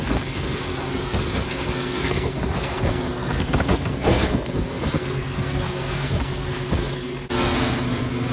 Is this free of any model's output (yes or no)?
no